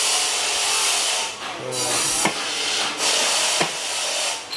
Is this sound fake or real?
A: real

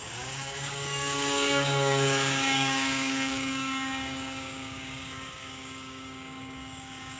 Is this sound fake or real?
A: fake